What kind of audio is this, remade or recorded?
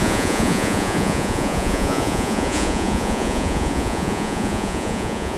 remade